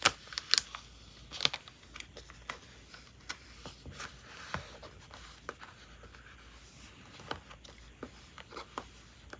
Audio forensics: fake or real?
real